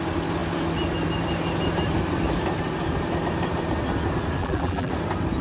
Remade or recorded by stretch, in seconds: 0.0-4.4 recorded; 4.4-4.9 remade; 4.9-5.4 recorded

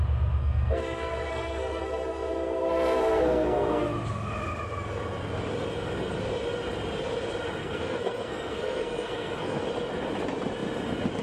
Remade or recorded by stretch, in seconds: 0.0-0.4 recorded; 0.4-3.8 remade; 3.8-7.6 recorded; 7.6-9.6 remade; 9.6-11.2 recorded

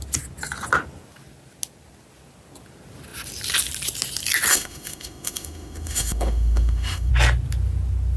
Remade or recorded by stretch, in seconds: 0.0-4.5 recorded; 4.5-7.1 remade; 7.1-8.2 recorded